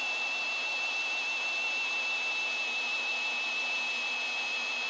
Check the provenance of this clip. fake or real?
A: real